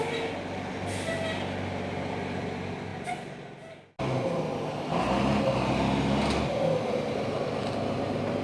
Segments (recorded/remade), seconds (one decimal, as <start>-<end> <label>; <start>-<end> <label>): 0.0-8.4 recorded